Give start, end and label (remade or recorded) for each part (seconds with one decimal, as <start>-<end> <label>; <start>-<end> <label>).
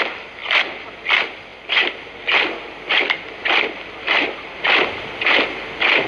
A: 0.0-0.4 recorded; 0.4-0.9 remade; 0.9-3.4 recorded; 3.4-5.2 remade; 5.2-6.1 recorded